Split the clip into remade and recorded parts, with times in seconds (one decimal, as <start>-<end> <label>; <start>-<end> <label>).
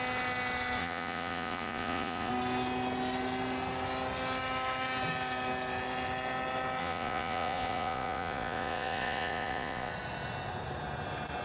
0.0-0.8 recorded; 0.8-2.3 remade; 2.3-6.8 recorded; 6.8-9.9 remade; 9.9-11.4 recorded